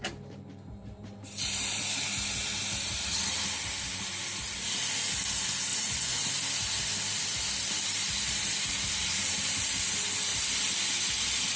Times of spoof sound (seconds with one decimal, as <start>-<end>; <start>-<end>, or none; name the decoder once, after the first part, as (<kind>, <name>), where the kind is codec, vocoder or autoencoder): 5.7-6.3 (vocoder, Vocos)